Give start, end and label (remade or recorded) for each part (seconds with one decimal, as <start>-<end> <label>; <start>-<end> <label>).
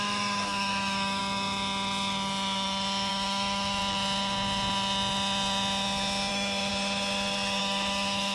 0.0-1.2 remade; 1.2-3.1 recorded; 3.1-3.8 remade; 3.8-6.3 recorded; 6.3-6.7 remade; 6.7-7.6 recorded; 7.6-8.3 remade